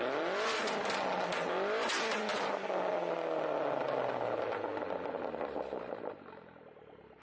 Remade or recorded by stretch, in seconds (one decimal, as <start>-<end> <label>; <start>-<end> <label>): 0.0-7.2 recorded